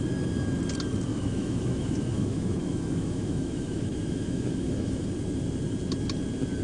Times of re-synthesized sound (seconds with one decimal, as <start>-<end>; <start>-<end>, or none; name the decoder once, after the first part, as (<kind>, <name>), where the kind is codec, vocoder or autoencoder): 1.1-5.1 (autoencoder, DAC-VAE)